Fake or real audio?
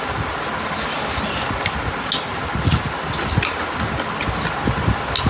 real